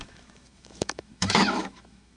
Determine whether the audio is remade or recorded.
remade